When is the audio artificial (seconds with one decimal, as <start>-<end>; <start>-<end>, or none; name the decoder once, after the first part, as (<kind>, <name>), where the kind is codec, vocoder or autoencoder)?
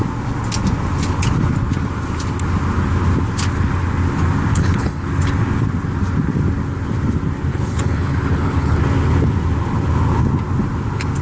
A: 4.5-5.1 (codec, HILCodec); 7.5-8.8